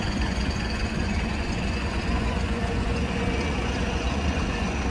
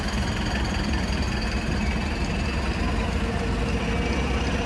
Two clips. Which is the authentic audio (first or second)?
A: second